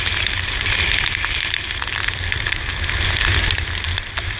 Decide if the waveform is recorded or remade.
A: recorded